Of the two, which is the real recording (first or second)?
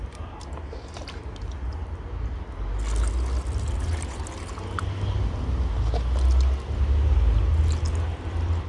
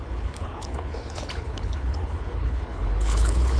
first